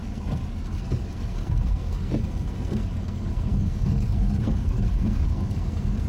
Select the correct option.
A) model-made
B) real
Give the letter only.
A